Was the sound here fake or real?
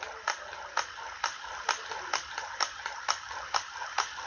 real